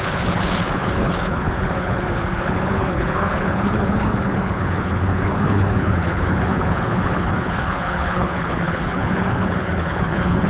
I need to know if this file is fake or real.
fake